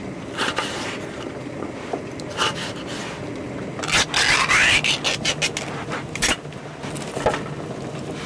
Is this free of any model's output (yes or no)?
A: yes